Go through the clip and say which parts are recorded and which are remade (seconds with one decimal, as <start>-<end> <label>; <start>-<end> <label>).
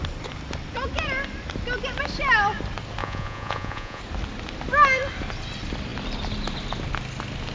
0.0-3.0 recorded; 3.0-4.0 remade; 4.0-7.5 recorded